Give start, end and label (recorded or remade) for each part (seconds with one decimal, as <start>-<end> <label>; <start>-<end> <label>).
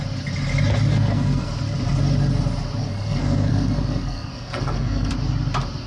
0.0-0.9 recorded; 0.9-1.5 remade; 1.5-2.8 recorded; 2.8-5.1 remade; 5.1-5.9 recorded